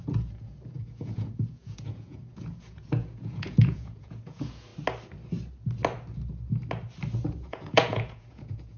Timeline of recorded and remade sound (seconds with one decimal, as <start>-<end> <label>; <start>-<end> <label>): 0.0-4.7 remade; 4.7-7.5 recorded; 7.5-8.8 remade